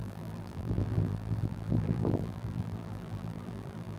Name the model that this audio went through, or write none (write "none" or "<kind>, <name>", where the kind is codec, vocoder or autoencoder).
vocoder, BigVGAN v2